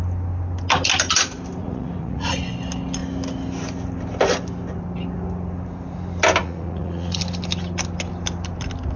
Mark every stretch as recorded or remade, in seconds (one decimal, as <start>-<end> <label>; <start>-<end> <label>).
0.0-1.6 recorded; 1.6-2.3 remade; 2.3-6.4 recorded; 6.4-7.2 remade; 7.2-9.0 recorded